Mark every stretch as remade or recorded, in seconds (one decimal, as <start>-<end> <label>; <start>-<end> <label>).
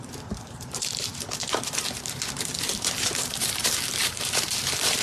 0.0-5.0 remade